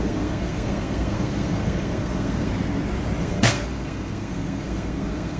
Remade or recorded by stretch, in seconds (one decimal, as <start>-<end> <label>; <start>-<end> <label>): 0.0-2.5 remade; 2.5-3.2 recorded; 3.2-5.4 remade